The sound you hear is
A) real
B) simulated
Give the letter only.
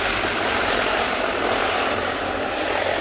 B